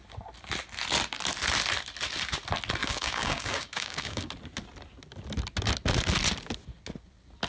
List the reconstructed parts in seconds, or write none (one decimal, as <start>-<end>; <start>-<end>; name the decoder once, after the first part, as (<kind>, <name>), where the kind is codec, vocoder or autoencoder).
2.8-4.3 (codec, DAC)